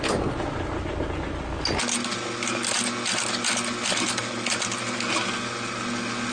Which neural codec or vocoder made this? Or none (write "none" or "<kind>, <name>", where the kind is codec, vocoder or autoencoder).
none